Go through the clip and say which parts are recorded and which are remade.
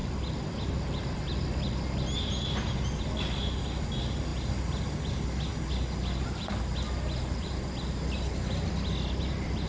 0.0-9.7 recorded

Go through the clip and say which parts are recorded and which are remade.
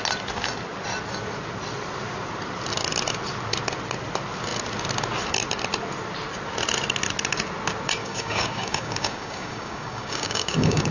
0.0-8.0 recorded; 8.0-10.9 remade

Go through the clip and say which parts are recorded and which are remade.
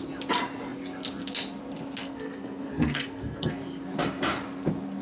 0.0-2.0 recorded; 2.0-3.5 remade; 3.5-5.0 recorded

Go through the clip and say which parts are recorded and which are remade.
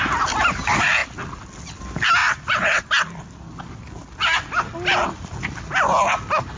0.0-2.2 recorded; 2.2-2.9 remade; 2.9-6.6 recorded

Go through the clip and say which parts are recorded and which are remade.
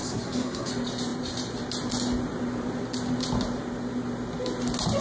0.0-0.7 remade; 0.7-5.0 recorded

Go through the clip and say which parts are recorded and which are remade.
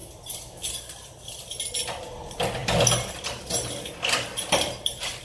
0.0-1.4 remade; 1.4-2.6 recorded; 2.6-5.2 remade